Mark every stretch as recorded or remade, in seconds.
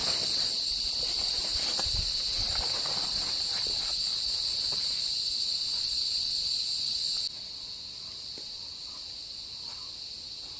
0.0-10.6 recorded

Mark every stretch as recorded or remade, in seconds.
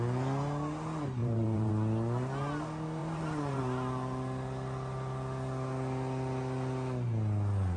0.0-1.2 recorded; 1.2-1.7 remade; 1.7-3.0 recorded; 3.0-3.6 remade; 3.6-7.8 recorded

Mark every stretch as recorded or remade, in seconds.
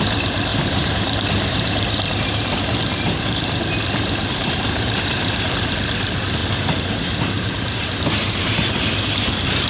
0.0-0.5 recorded; 0.5-5.7 remade; 5.7-6.4 recorded; 6.4-9.7 remade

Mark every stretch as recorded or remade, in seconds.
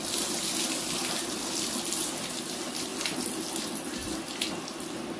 0.0-5.2 recorded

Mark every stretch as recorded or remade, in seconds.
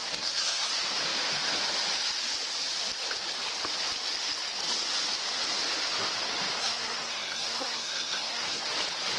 0.0-0.7 remade; 0.7-6.6 recorded; 6.6-8.7 remade; 8.7-9.2 recorded